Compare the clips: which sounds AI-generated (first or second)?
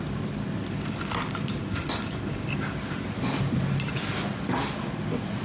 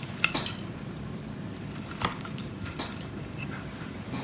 second